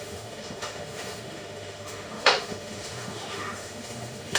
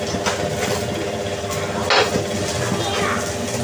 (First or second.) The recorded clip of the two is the second